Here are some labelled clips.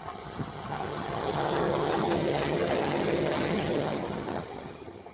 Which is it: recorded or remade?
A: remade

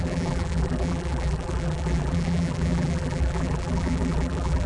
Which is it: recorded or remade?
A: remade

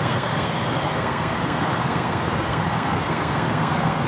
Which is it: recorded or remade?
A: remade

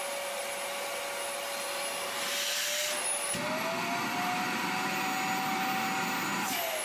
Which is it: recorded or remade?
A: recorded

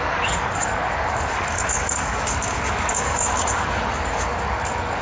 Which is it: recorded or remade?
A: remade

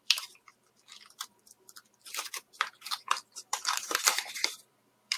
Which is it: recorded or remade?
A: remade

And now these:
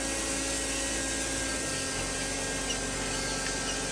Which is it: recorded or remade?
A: recorded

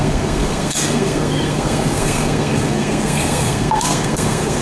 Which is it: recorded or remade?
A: remade